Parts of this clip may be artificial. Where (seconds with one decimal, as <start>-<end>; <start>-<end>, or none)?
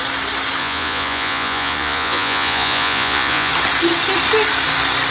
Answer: 0.6-3.5